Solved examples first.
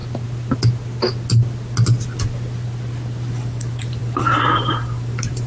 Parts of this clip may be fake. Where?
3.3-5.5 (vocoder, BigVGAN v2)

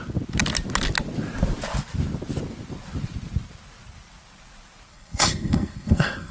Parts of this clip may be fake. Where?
4.9-6.3 (codec, SNAC)

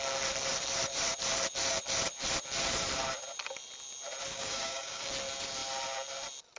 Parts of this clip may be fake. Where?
4.3-5.1 (codec, DAC)

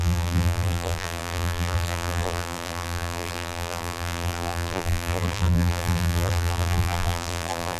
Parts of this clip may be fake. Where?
0.0-7.8 (vocoder, BigVGAN v2)

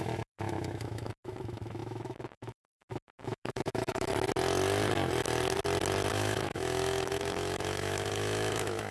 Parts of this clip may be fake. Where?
0.0-4.1 (autoencoder, DAC-VAE); 6.1-8.9